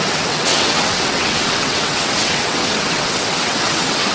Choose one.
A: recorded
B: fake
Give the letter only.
B